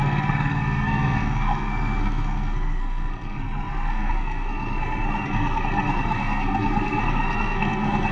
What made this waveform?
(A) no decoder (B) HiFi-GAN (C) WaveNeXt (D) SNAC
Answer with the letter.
D